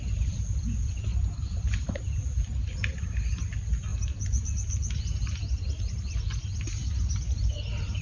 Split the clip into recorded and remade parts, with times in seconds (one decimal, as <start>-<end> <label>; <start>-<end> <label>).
0.0-8.0 recorded